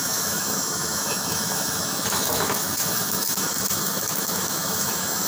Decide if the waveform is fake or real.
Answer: fake